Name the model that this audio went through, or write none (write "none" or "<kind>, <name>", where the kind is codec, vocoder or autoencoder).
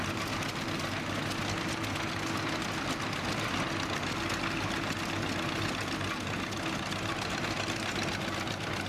none